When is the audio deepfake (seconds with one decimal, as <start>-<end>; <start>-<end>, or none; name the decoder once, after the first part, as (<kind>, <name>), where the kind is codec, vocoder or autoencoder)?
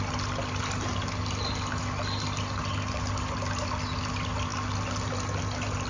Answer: none